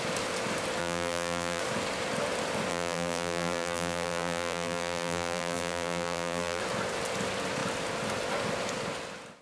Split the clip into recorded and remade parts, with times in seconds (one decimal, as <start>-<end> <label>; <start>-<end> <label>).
0.0-0.8 recorded; 0.8-1.6 remade; 1.6-2.7 recorded; 2.7-6.6 remade; 6.6-9.4 recorded

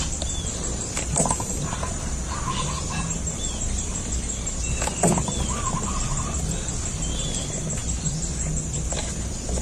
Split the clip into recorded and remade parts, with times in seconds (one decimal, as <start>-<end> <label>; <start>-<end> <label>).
0.0-9.6 recorded

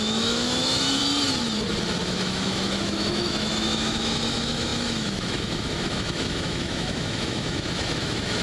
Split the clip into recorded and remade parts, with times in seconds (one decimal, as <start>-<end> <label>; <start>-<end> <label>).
0.0-1.0 remade; 1.0-2.0 recorded; 2.0-8.4 remade

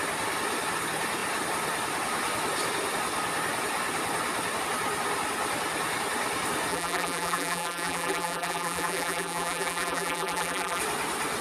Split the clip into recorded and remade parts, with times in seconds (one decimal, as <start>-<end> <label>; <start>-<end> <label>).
0.0-6.7 recorded; 6.7-10.8 remade; 10.8-11.4 recorded

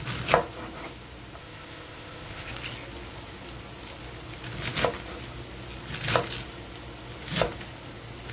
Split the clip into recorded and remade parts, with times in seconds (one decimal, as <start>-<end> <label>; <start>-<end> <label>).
0.0-1.4 recorded; 1.4-2.5 remade; 2.5-8.3 recorded

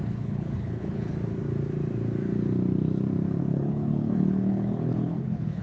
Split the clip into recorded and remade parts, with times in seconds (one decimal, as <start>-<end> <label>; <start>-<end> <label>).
0.0-1.1 remade; 1.1-3.4 recorded; 3.4-5.6 remade

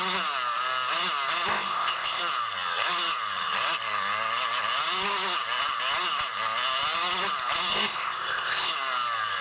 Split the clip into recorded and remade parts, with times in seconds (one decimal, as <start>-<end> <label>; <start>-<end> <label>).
0.0-1.5 recorded; 1.5-2.2 remade; 2.2-7.7 recorded; 7.7-8.7 remade; 8.7-9.4 recorded

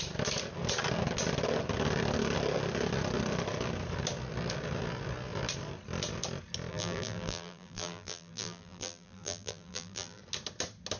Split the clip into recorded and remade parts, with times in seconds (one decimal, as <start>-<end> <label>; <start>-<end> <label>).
0.0-6.7 recorded; 6.7-10.2 remade; 10.2-11.0 recorded